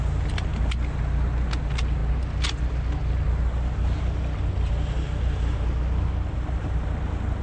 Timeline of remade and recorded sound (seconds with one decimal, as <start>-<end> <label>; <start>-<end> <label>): 0.0-7.4 recorded